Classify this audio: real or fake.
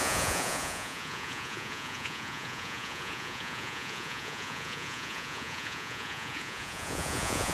fake